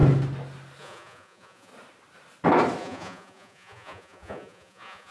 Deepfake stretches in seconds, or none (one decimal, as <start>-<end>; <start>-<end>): 0.8-1.7; 2.8-5.1